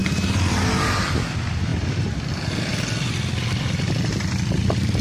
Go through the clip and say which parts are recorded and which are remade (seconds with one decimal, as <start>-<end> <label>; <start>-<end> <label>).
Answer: 0.0-1.0 recorded; 1.0-1.7 remade; 1.7-2.3 recorded; 2.3-2.7 remade; 2.7-4.1 recorded; 4.1-5.0 remade